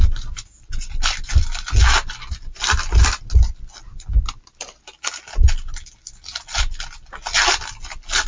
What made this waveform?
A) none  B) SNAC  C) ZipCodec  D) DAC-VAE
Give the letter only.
A